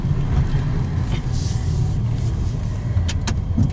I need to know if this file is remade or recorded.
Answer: recorded